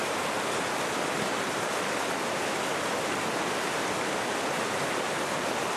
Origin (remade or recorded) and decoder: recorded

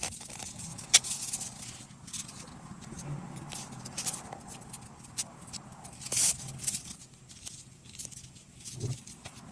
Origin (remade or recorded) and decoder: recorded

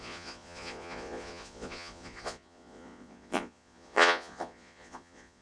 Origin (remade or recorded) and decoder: remade, vocoder, Vocos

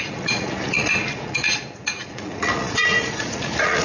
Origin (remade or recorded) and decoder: remade, vocoder, Vocos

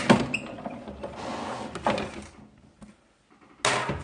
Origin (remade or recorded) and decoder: recorded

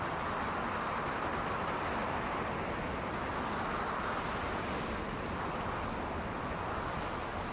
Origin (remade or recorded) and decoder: recorded